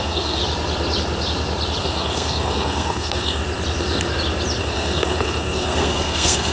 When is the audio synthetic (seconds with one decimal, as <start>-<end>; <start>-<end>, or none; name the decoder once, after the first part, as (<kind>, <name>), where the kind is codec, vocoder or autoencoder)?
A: 0.0-0.4 (codec, SNAC); 1.8-3.4; 4.6-6.5